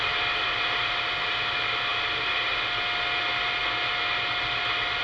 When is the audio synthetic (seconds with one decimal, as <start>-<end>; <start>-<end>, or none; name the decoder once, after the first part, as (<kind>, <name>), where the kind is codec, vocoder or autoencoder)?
none